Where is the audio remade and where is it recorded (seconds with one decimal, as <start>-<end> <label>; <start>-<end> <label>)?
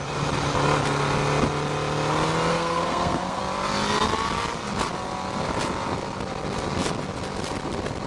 0.0-2.5 recorded; 2.5-3.4 remade; 3.4-8.1 recorded